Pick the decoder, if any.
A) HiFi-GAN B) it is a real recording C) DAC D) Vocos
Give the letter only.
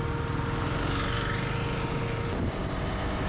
B